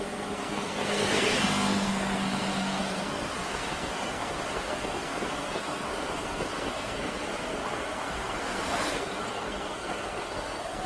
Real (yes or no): no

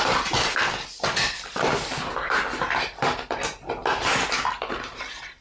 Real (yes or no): yes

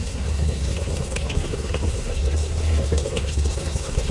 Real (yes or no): no